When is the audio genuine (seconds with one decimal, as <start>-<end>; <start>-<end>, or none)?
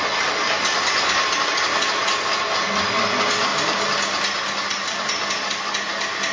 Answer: 0.0-6.3